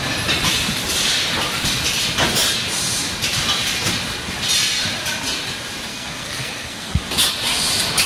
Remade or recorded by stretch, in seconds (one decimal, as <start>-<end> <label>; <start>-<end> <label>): 0.0-5.9 recorded; 5.9-7.0 remade; 7.0-8.1 recorded